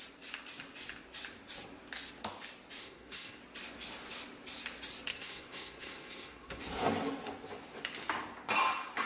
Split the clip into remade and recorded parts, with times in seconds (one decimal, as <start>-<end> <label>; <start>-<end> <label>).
0.0-2.8 recorded; 2.8-3.4 remade; 3.4-5.1 recorded; 5.1-6.6 remade; 6.6-9.1 recorded